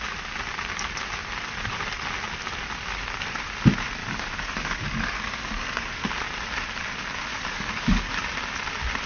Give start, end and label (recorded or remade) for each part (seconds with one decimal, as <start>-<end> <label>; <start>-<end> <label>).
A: 0.0-4.0 recorded; 4.0-6.1 remade; 6.1-7.3 recorded; 7.3-8.1 remade; 8.1-9.1 recorded